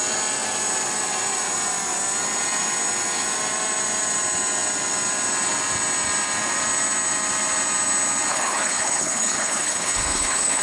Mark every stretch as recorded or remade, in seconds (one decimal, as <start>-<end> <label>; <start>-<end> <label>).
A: 0.0-8.3 recorded; 8.3-10.6 remade